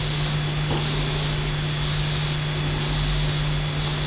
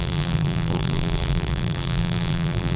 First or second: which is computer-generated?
second